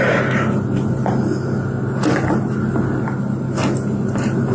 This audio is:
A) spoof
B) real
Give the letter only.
B